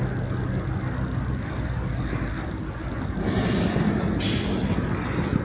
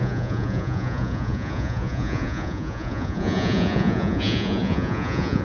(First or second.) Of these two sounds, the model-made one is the second